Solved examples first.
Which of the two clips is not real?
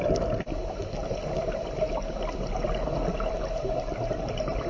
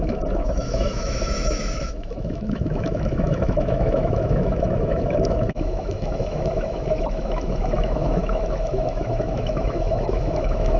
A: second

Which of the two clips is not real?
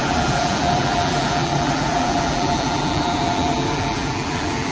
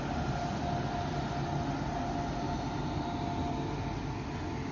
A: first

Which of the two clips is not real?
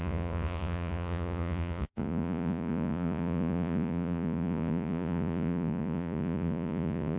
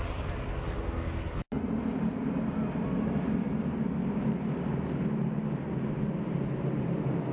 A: first